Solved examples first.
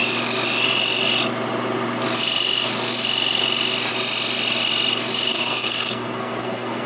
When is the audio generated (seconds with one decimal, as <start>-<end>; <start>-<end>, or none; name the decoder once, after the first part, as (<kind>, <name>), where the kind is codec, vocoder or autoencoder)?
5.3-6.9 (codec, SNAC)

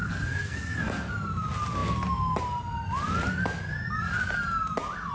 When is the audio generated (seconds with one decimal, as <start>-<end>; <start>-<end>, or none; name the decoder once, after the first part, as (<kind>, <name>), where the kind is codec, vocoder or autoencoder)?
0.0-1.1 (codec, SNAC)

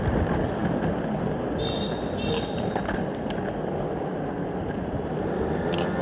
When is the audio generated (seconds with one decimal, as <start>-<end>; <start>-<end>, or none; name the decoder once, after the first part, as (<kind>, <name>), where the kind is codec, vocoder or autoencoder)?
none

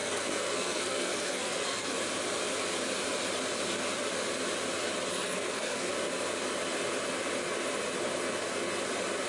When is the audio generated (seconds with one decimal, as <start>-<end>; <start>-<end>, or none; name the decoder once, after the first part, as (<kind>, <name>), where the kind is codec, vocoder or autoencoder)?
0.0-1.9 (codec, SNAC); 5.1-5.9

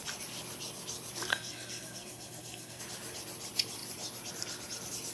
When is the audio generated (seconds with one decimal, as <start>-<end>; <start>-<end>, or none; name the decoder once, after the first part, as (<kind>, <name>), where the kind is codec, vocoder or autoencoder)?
1.3-2.8 (codec, SNAC)

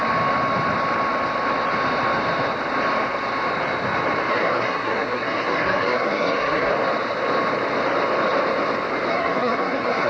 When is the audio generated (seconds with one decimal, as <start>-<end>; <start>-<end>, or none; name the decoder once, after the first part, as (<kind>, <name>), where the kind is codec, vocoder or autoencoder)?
4.3-6.7 (codec, SNAC); 9.1-10.1

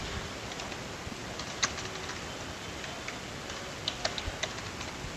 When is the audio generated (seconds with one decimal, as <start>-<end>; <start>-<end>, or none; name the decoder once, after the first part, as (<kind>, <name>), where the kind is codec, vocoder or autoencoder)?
none

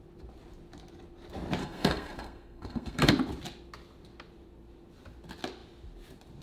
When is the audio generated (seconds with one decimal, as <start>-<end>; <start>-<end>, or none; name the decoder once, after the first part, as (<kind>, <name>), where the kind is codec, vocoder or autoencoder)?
1.6-3.1 (codec, SNAC)